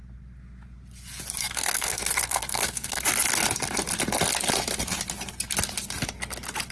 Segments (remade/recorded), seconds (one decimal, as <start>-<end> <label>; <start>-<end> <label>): 0.0-1.4 recorded; 1.4-3.0 remade; 3.0-6.7 recorded